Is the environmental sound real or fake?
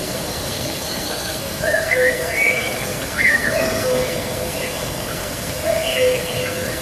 fake